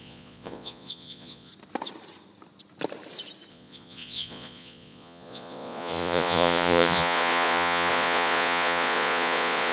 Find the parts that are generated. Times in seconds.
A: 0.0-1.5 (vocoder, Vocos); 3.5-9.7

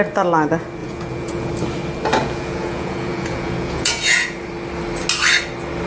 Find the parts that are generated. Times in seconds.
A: 0.8-1.5 (vocoder, Vocos); 2.2-4.5

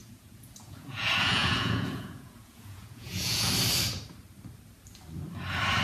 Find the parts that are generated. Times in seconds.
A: 0.0-3.5 (vocoder, Vocos)